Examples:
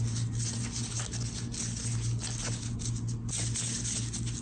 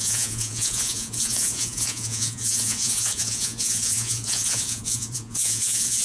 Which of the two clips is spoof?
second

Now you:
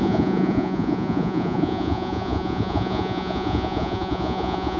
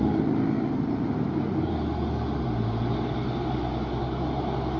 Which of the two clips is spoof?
first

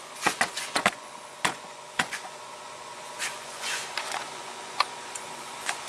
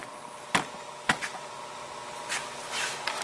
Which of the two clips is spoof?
first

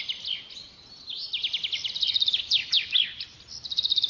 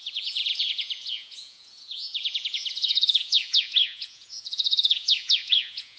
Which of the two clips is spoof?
second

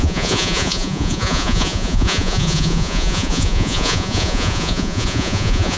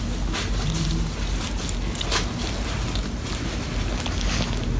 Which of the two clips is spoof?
first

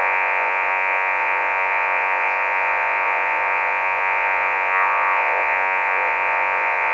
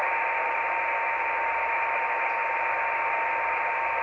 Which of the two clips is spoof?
first